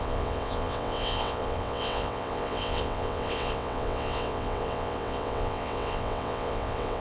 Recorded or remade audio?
remade